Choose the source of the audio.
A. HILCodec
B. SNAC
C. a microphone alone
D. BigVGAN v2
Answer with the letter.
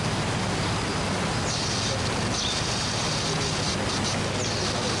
C